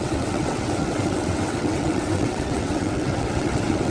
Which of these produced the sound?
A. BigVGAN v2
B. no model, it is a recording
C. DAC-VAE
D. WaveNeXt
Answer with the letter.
D